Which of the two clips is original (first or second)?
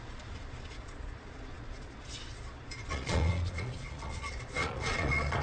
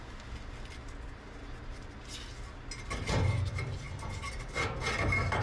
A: second